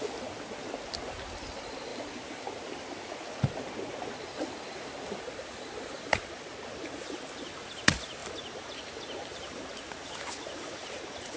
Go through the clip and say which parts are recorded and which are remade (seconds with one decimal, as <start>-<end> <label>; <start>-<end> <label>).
0.0-11.4 recorded